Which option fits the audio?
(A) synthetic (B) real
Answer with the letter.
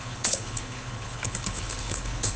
A